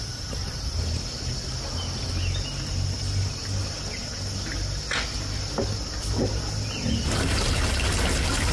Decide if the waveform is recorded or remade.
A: recorded